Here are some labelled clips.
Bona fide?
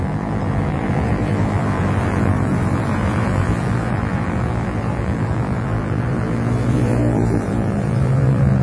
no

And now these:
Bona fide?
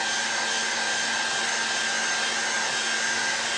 yes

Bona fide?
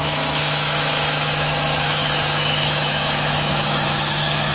no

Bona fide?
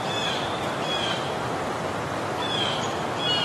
no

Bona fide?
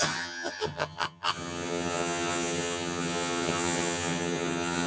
no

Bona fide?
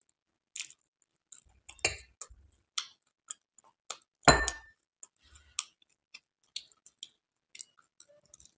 yes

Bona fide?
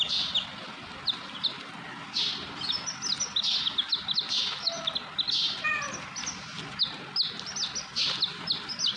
yes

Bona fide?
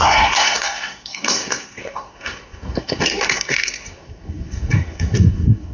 no